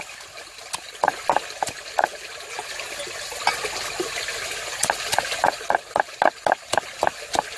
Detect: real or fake real